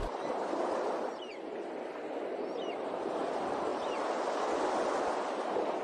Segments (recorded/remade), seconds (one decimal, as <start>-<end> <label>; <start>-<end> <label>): 0.0-1.3 recorded; 1.3-1.9 remade; 1.9-3.7 recorded; 3.7-4.3 remade; 4.3-5.8 recorded